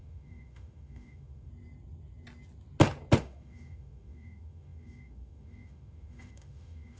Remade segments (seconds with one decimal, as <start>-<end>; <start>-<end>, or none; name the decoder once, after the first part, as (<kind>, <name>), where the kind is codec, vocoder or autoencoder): 0.0-1.5 (autoencoder, DAC-VAE); 3.2-7.0